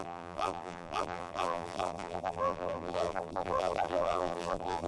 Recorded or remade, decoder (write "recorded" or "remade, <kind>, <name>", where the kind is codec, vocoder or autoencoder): remade, vocoder, BigVGAN v2